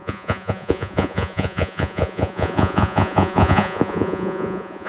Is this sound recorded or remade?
remade